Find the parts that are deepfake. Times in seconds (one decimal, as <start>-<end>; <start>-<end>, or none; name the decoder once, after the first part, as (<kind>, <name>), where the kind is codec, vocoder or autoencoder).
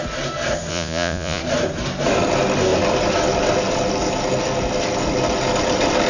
0.7-1.4 (vocoder, Vocos)